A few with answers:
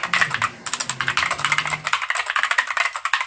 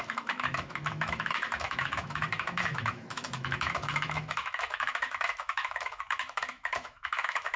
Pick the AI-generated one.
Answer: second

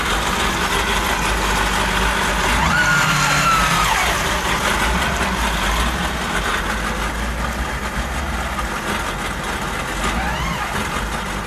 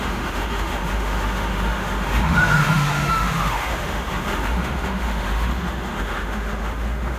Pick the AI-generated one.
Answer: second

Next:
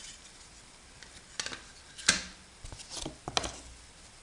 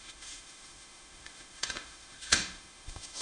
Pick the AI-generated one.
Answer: second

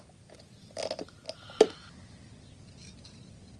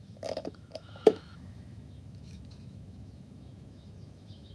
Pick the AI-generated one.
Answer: second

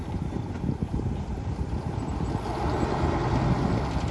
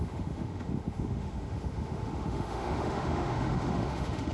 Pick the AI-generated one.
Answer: second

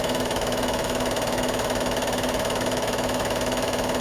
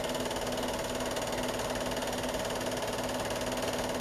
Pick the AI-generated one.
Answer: first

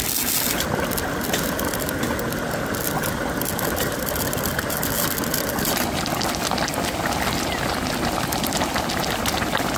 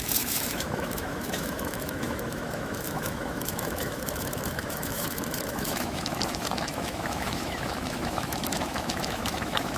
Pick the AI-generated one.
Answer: second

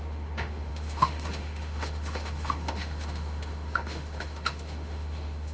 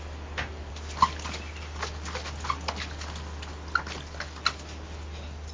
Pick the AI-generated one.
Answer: first